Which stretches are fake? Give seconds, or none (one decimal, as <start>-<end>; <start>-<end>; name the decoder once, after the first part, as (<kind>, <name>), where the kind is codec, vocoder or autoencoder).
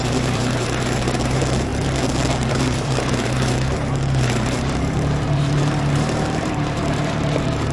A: 0.0-1.7 (vocoder, BigVGAN v2); 2.5-7.7